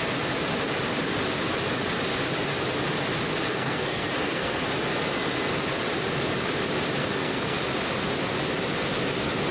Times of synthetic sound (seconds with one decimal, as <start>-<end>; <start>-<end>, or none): 3.5-4.6; 7.0-7.6